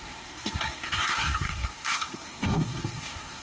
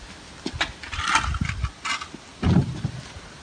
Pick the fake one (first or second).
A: first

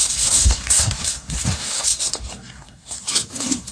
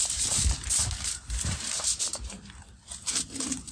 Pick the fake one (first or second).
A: first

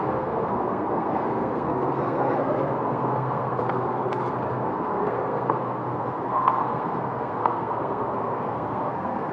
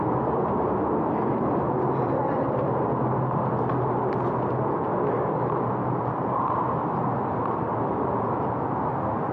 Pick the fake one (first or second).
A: first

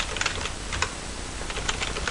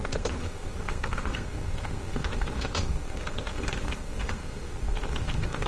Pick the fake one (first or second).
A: second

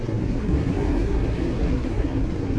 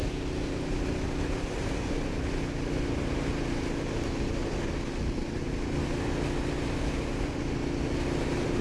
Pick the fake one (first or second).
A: first